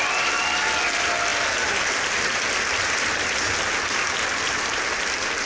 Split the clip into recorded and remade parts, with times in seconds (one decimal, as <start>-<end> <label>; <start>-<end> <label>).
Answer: 0.0-5.5 recorded